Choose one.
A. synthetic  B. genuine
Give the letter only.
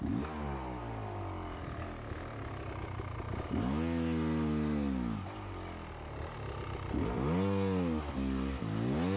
B